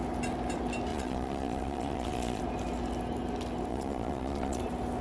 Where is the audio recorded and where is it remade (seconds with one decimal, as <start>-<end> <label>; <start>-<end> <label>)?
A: 0.0-0.9 recorded; 0.9-2.4 remade; 2.4-3.7 recorded; 3.7-4.6 remade; 4.6-5.0 recorded

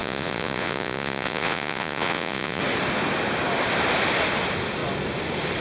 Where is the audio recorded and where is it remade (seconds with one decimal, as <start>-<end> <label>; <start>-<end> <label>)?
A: 0.0-2.6 remade; 2.6-5.6 recorded

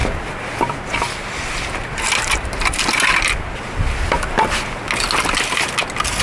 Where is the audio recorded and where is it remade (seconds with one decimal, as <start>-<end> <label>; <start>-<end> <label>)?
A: 0.0-6.2 recorded

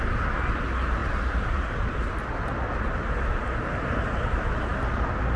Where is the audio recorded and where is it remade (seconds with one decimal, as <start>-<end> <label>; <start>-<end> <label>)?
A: 0.0-5.4 recorded

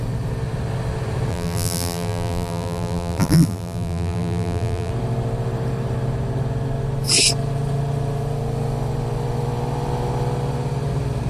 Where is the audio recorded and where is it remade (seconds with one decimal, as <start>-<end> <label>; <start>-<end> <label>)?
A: 0.0-1.3 recorded; 1.3-4.9 remade; 4.9-11.3 recorded

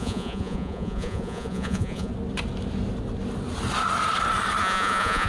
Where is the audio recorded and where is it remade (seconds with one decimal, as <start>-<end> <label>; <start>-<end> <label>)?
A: 0.0-2.1 remade; 2.1-4.6 recorded; 4.6-5.3 remade

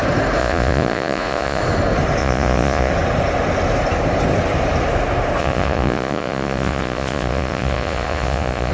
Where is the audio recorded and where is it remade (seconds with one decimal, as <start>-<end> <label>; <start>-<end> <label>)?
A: 0.0-0.4 recorded; 0.4-1.6 remade; 1.6-2.2 recorded; 2.2-2.9 remade; 2.9-5.4 recorded; 5.4-8.7 remade

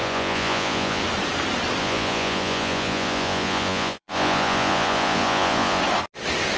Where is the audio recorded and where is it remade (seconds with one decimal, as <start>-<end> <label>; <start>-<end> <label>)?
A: 0.0-1.0 remade; 1.0-1.8 recorded; 1.8-5.8 remade; 5.8-6.6 recorded